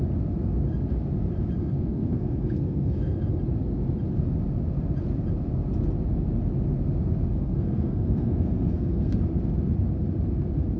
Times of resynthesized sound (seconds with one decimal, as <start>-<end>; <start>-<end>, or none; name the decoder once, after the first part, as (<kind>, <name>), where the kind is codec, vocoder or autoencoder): 1.6-3.3 (codec, SNAC); 7.3-9.2